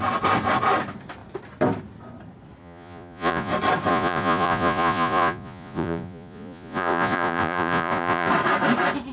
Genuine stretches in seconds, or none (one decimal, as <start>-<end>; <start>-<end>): 0.0-2.6; 3.5-3.9; 8.3-9.1